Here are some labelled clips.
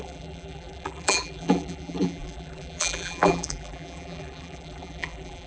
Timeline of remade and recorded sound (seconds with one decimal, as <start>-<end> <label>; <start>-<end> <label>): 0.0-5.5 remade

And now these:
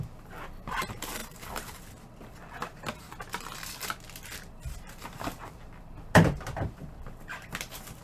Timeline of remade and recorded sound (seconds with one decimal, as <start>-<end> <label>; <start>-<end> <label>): 0.0-1.2 remade; 1.2-5.0 recorded; 5.0-8.0 remade

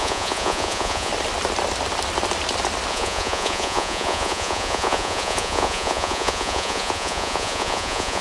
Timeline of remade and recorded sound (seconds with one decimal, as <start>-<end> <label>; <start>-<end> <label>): 0.0-1.1 remade; 1.1-2.9 recorded; 2.9-8.2 remade

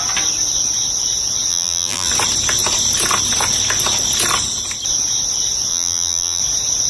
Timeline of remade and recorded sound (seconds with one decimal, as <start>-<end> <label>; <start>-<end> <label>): 0.0-1.5 recorded; 1.5-2.1 remade; 2.1-5.7 recorded; 5.7-6.4 remade; 6.4-6.9 recorded

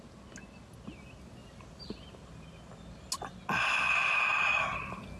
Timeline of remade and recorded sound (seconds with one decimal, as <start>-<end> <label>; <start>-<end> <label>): 0.0-5.2 recorded